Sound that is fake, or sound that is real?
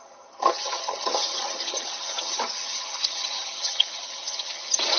fake